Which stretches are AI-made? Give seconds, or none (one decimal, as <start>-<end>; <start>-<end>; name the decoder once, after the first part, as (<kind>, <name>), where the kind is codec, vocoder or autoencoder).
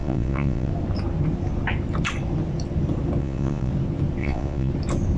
0.0-0.7 (vocoder, Vocos); 3.2-3.7; 4.2-4.7